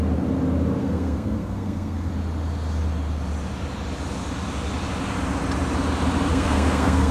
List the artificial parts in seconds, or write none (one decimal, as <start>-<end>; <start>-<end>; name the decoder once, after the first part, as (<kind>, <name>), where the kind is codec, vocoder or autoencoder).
0.8-2.1 (codec, SNAC); 6.3-7.1

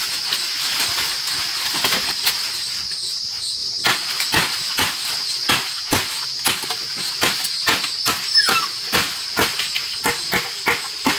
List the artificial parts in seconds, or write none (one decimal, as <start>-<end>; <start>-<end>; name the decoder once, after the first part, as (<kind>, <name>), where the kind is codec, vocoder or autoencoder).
none

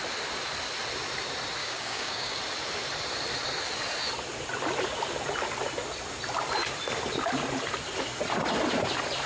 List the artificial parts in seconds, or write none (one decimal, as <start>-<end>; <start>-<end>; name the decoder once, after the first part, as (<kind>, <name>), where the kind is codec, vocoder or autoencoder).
1.6-2.4 (codec, DAC)

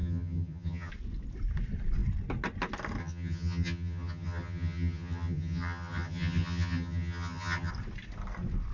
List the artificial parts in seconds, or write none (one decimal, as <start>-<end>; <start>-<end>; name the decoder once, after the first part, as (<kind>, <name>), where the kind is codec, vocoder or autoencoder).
0.0-0.9 (vocoder, HiFi-GAN); 3.0-7.7

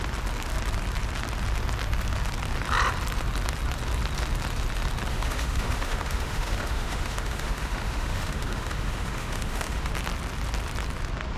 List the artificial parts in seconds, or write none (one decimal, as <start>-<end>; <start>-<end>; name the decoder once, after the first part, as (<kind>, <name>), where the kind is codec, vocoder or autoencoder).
5.1-9.9 (autoencoder, DAC-VAE)

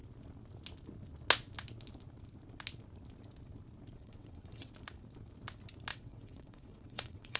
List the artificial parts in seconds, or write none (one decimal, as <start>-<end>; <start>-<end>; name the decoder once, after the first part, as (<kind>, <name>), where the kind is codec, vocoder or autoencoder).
4.0-4.7 (vocoder, WaveNeXt); 5.9-7.4

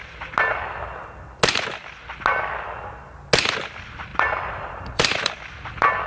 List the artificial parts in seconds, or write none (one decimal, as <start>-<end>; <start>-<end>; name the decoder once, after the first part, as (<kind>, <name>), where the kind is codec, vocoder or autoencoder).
4.1-6.1 (vocoder, BigVGAN v2)

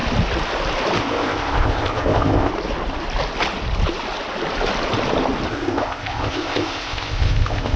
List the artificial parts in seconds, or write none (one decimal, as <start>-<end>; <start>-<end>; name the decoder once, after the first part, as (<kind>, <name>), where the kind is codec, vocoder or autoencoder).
1.0-2.5 (codec, ZipCodec); 5.5-7.8